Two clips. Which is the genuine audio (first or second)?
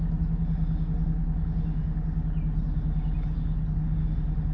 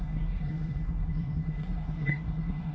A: first